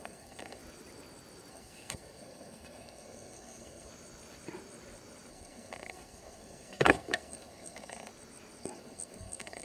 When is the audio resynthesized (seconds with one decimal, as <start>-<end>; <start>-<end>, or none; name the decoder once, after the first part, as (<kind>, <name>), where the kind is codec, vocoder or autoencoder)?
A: 0.0-0.6 (codec, SNAC); 1.5-3.9; 5.3-8.1; 8.6-9.6